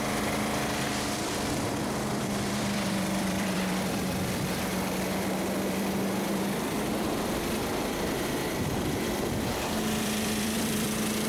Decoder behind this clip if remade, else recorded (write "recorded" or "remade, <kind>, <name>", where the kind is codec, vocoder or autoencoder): remade, vocoder, BigVGAN v2